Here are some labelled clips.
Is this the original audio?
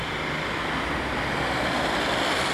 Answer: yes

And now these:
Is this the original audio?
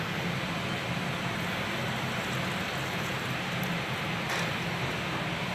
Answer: yes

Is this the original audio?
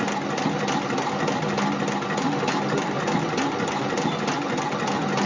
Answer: yes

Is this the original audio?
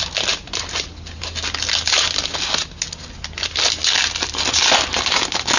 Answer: yes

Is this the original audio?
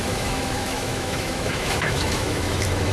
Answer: no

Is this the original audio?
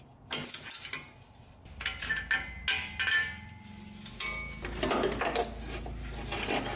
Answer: yes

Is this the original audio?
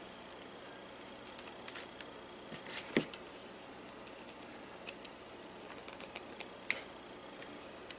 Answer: yes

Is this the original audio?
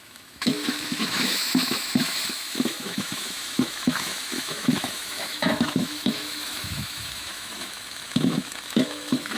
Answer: no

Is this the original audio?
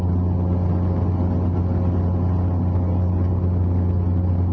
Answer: yes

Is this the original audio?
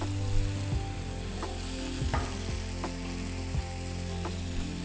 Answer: yes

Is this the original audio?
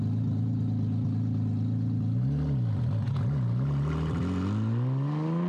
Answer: yes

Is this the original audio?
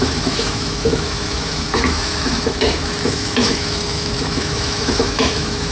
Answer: no